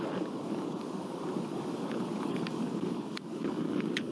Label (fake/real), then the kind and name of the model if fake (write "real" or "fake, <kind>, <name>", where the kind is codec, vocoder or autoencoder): fake, codec, DAC